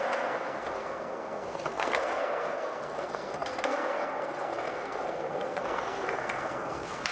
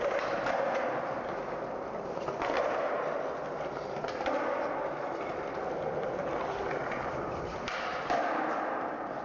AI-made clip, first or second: first